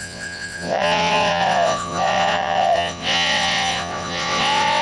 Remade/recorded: remade